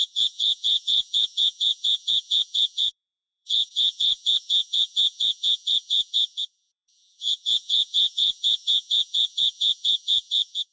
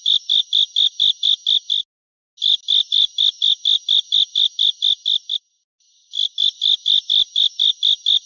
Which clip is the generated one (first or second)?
first